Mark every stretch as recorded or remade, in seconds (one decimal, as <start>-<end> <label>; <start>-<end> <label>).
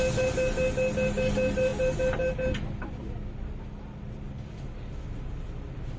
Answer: 0.0-6.0 recorded